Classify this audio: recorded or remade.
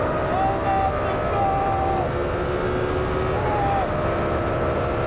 recorded